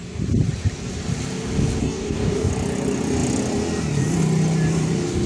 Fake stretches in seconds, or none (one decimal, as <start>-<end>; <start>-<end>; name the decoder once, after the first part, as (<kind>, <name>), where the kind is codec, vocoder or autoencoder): 1.8-2.5 (codec, DAC)